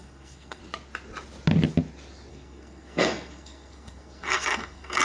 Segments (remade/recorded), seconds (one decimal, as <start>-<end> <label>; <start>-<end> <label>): 0.0-0.6 remade; 0.6-2.3 recorded; 2.3-5.0 remade